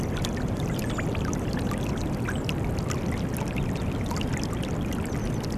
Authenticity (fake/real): real